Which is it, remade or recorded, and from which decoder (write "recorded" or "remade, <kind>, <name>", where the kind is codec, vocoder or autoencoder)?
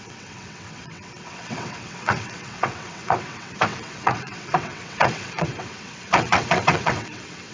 remade, vocoder, WaveNeXt